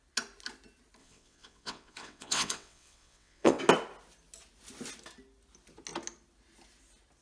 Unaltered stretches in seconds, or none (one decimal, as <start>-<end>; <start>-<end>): 0.0-1.0; 3.6-7.2